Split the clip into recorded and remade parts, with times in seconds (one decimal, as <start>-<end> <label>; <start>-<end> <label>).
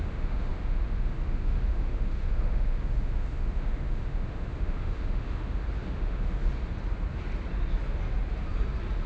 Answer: 0.0-6.5 remade; 6.5-9.1 recorded